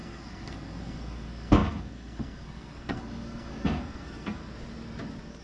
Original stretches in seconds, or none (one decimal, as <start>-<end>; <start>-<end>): 4.4-5.4